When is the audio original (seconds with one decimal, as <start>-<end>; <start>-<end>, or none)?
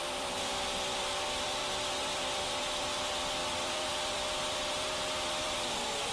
none